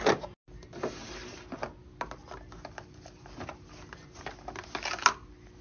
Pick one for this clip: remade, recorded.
recorded